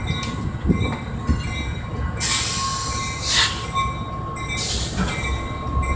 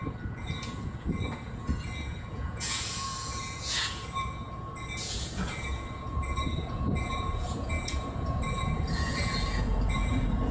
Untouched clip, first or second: first